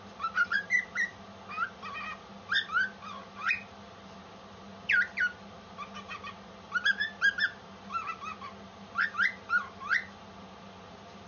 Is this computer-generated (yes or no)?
no